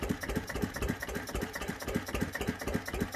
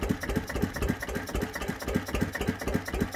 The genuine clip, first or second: second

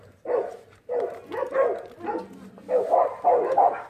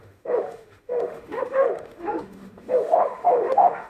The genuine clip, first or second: first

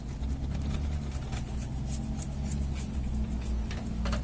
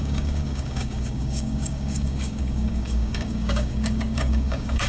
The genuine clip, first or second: first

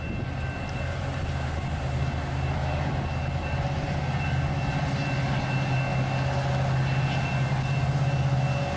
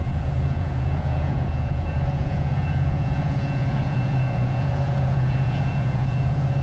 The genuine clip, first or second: first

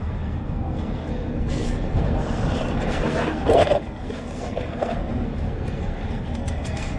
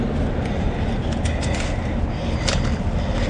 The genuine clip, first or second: second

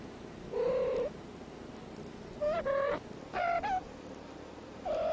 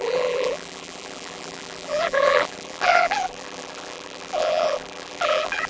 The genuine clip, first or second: first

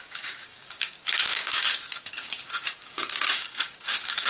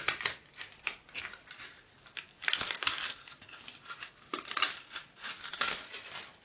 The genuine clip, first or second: second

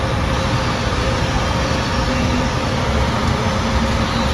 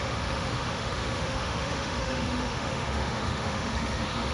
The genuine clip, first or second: first